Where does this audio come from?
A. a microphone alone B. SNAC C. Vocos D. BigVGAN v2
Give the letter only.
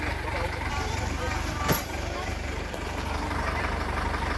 D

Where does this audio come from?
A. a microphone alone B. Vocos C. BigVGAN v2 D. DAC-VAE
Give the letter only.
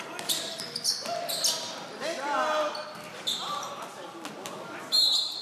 A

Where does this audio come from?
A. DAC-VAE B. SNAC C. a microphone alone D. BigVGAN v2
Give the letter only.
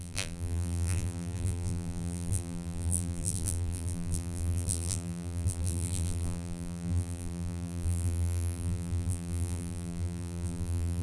D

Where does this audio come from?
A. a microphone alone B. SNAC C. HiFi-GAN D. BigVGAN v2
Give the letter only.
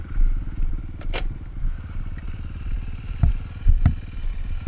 D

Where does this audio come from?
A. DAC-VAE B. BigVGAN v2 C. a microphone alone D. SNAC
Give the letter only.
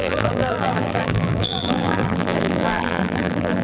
B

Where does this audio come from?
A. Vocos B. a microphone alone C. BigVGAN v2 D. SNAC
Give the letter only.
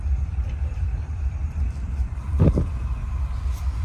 C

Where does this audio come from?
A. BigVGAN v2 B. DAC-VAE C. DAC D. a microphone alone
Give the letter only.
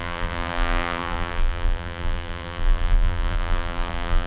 A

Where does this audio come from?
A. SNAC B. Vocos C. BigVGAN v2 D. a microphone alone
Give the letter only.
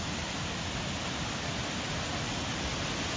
D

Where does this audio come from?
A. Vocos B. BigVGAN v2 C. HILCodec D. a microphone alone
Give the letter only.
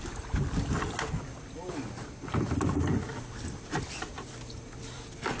B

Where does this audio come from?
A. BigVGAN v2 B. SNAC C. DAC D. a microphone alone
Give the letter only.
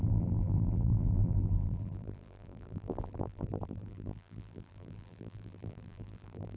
A